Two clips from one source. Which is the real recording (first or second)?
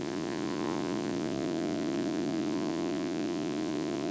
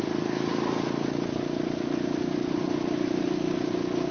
second